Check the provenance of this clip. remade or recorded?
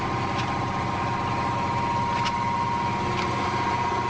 recorded